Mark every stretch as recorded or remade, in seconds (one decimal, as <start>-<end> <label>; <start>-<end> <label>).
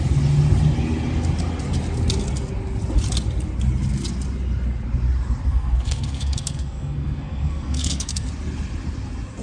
0.0-5.5 recorded; 5.5-8.3 remade; 8.3-9.4 recorded